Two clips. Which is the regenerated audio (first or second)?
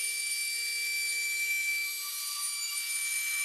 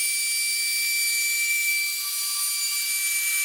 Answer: first